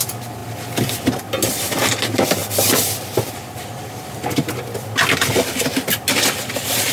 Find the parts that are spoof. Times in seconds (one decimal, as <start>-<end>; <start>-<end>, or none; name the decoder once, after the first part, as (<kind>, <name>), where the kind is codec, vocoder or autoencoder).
none